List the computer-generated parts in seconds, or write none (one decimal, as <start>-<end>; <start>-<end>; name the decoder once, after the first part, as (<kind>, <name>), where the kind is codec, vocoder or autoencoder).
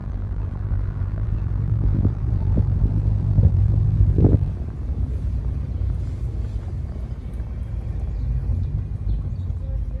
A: 0.0-4.5 (vocoder, BigVGAN v2)